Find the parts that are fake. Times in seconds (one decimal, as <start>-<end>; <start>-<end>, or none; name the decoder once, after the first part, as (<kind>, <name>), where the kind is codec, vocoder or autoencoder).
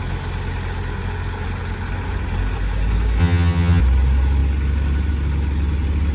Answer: 3.2-3.8 (vocoder, HiFi-GAN)